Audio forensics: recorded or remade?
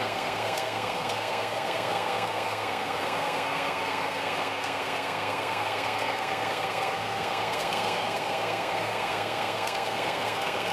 remade